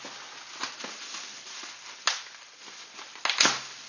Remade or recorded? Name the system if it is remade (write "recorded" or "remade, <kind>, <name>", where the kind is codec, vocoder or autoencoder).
recorded